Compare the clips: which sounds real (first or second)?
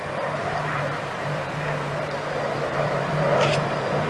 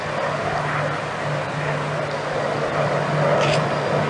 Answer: second